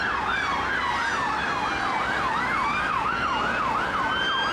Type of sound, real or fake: real